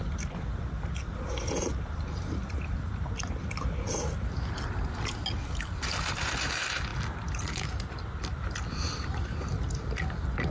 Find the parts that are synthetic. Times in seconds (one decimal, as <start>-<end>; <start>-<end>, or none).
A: none